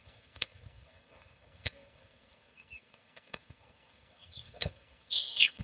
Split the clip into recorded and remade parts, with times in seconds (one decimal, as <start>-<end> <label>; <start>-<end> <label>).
0.0-5.6 remade